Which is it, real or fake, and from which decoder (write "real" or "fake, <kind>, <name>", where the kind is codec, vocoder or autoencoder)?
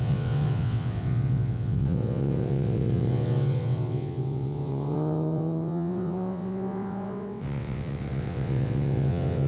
fake, vocoder, WaveNeXt